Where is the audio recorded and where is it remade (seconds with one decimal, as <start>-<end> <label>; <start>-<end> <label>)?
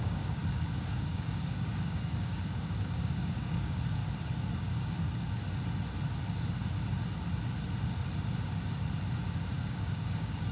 0.0-4.0 remade; 4.0-4.6 recorded; 4.6-5.4 remade; 5.4-9.5 recorded; 9.5-10.5 remade